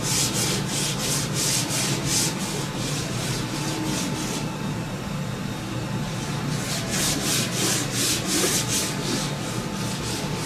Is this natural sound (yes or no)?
yes